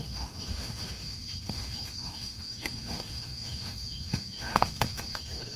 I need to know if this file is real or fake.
fake